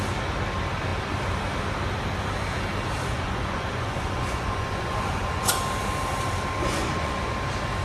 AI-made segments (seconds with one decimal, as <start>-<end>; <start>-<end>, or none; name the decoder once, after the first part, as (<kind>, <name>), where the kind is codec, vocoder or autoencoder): 3.1-5.5 (vocoder, Vocos); 6.6-7.3